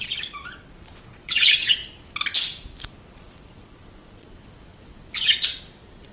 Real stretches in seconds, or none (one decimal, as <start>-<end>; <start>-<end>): 1.8-3.2